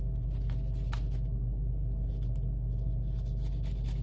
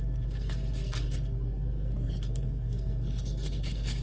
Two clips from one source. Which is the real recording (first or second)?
first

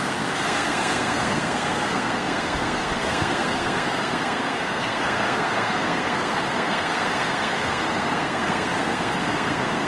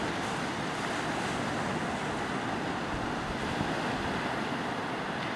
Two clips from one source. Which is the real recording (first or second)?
second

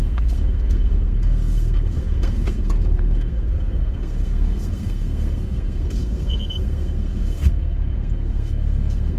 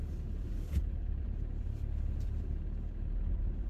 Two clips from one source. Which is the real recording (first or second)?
second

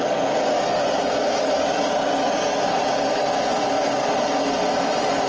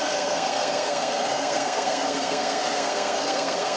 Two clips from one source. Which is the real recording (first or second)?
first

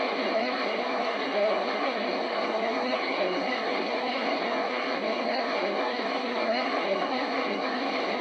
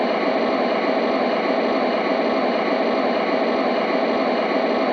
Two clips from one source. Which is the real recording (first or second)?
second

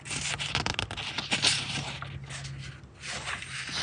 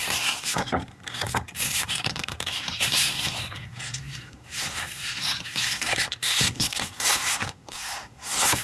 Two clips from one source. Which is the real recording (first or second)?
first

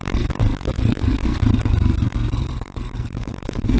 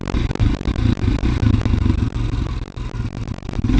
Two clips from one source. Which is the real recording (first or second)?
second